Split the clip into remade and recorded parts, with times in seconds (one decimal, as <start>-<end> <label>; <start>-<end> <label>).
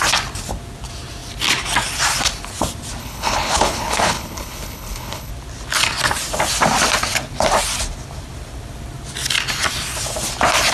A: 0.0-3.0 recorded; 3.0-5.3 remade; 5.3-10.7 recorded